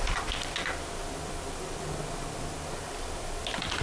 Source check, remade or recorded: recorded